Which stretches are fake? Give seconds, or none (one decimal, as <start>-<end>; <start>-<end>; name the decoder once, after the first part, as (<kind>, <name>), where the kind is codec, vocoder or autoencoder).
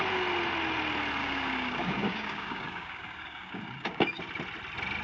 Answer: 1.2-4.2 (codec, DAC)